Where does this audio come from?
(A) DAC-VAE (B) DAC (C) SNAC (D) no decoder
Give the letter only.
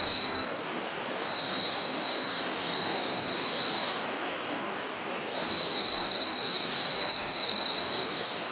B